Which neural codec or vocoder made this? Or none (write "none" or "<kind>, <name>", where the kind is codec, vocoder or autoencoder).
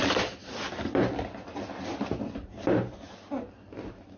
none